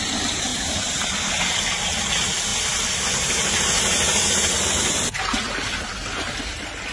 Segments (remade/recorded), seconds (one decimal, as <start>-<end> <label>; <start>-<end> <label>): 0.0-0.5 recorded; 0.5-1.6 remade; 1.6-2.5 recorded; 2.5-4.5 remade; 4.5-6.9 recorded